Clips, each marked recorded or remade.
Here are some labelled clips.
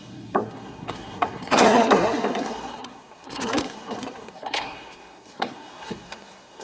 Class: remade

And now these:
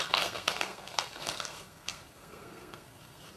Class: remade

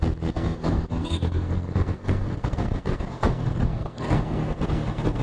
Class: remade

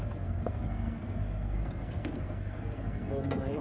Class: remade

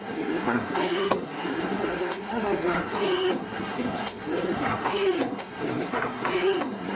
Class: remade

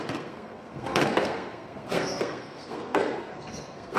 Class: remade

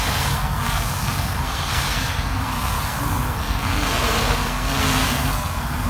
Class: remade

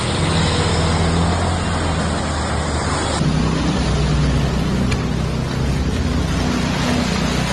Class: recorded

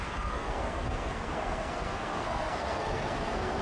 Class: remade